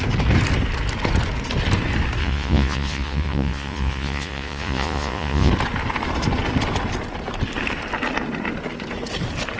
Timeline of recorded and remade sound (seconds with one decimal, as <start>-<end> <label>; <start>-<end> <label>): 0.0-2.2 recorded; 2.2-5.5 remade; 5.5-9.6 recorded